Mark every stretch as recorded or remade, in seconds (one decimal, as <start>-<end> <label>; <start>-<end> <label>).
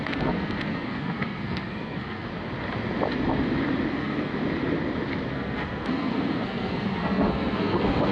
0.0-2.3 remade; 2.3-3.9 recorded; 3.9-4.3 remade; 4.3-5.3 recorded; 5.3-8.1 remade